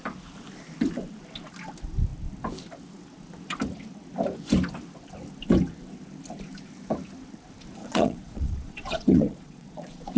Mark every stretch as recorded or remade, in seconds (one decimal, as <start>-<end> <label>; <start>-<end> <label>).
0.0-7.8 recorded; 7.8-10.2 remade